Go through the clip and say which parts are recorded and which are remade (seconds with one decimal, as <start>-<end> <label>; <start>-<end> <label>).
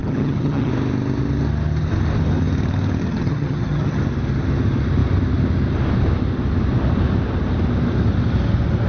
0.0-0.7 remade; 0.7-3.0 recorded; 3.0-4.0 remade; 4.0-8.9 recorded